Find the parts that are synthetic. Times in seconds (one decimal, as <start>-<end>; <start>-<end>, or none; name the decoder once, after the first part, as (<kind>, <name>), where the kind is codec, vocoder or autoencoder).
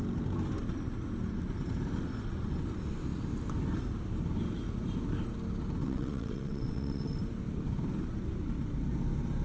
5.8-7.2 (vocoder, WaveNeXt)